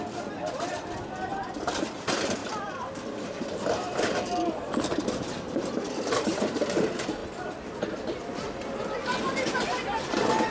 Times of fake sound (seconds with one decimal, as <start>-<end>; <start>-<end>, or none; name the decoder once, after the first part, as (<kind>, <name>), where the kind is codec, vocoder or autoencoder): 0.0-7.2 (vocoder, BigVGAN v2); 9.2-10.5